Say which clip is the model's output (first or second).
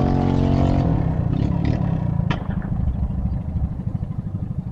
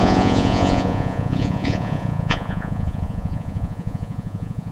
second